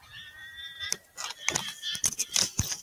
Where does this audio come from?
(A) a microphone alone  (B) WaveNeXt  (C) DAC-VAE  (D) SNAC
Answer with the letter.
A